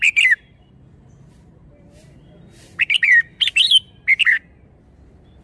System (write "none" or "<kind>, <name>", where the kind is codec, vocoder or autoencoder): none